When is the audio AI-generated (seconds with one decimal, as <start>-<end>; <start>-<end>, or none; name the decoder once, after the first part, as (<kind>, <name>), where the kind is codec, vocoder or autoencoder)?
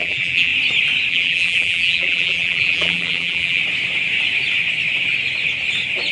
0.0-0.5 (vocoder, BigVGAN v2); 1.1-3.6